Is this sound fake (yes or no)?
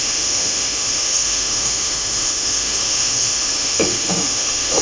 yes